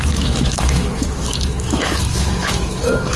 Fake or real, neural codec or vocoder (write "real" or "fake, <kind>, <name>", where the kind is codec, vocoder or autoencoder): fake, autoencoder, DAC-VAE